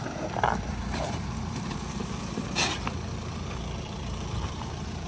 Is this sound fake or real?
fake